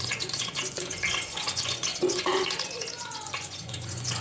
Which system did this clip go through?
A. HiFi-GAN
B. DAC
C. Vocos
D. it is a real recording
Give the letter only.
C